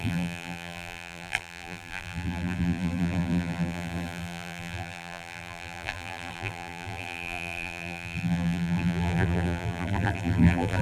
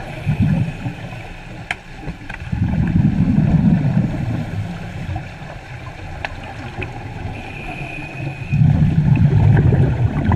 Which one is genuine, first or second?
second